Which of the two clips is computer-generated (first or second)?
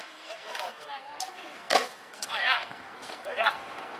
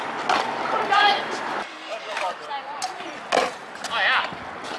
first